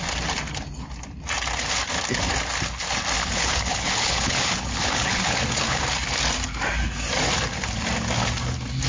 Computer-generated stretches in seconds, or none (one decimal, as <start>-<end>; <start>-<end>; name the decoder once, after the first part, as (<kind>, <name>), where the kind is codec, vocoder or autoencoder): 3.2-5.8 (codec, HILCodec)